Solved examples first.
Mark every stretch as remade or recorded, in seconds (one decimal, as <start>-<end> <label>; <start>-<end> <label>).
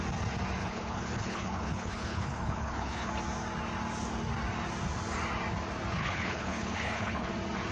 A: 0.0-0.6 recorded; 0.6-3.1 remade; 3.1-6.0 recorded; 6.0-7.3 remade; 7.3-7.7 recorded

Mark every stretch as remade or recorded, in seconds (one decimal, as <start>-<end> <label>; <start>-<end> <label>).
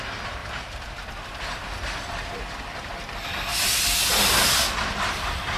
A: 0.0-5.6 recorded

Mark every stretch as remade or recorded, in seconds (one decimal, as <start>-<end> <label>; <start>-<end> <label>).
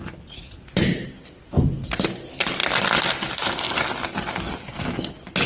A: 0.0-5.5 recorded